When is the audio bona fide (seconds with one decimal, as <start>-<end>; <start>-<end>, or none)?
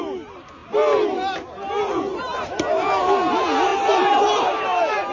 0.0-5.1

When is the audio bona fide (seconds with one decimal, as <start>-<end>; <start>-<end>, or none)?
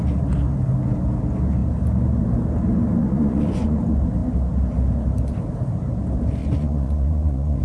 0.0-3.0; 3.8-6.4